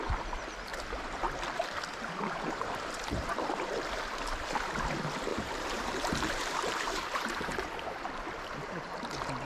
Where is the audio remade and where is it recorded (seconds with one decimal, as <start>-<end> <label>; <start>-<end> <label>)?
0.0-0.7 recorded; 0.7-3.5 remade; 3.5-5.3 recorded; 5.3-8.0 remade; 8.0-9.5 recorded